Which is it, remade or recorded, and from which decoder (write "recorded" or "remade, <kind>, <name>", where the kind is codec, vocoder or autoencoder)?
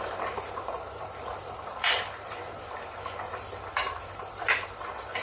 remade, vocoder, BigVGAN v2